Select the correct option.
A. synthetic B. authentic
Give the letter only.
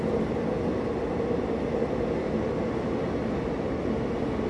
B